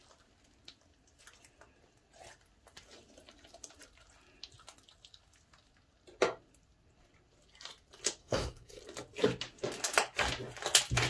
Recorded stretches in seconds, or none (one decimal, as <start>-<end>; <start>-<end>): 0.0-8.2; 8.8-11.1